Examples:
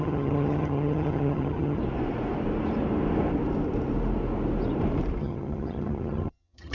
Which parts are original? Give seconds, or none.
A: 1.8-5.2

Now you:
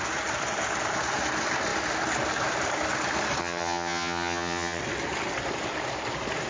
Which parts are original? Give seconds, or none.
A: 0.0-3.4; 4.8-6.5

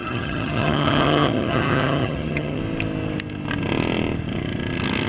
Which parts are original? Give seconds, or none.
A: 2.6-5.1

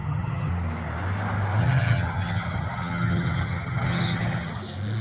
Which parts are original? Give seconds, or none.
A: 0.5-1.6; 4.6-5.0

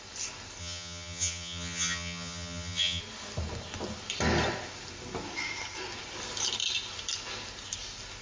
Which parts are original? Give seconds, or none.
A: 0.0-0.6; 3.0-8.2